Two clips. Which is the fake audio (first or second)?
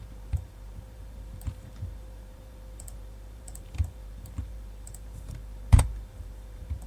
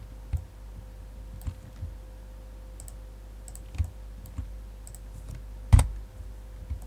first